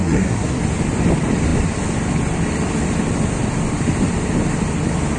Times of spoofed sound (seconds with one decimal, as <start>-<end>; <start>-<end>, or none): 0.0-0.6